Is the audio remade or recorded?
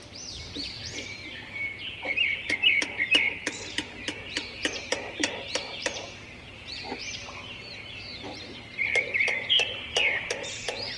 remade